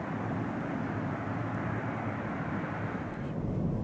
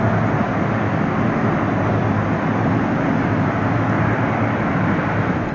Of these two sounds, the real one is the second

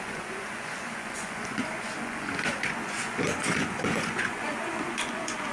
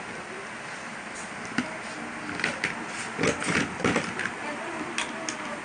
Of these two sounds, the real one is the second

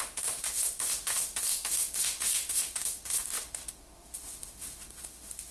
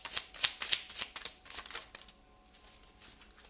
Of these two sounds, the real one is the second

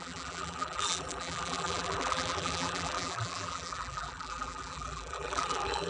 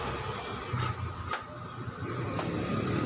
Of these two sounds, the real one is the second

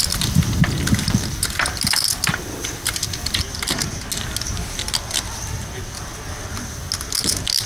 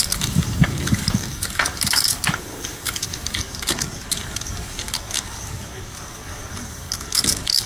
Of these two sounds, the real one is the first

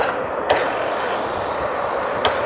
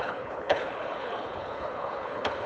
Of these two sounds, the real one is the first